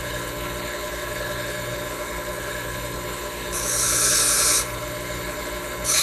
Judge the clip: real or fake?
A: fake